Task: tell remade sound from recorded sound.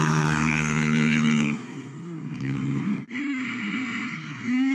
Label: remade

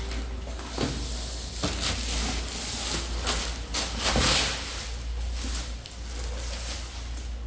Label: recorded